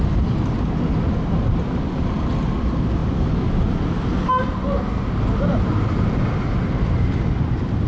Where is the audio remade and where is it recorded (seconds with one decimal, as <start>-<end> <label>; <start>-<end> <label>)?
0.0-7.9 recorded